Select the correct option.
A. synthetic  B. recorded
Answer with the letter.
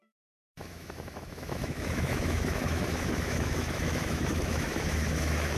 A